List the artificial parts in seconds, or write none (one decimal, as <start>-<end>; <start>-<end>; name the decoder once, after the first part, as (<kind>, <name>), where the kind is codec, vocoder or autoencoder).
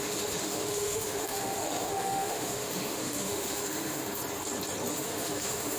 0.0-4.2 (autoencoder, DAC-VAE); 4.9-5.8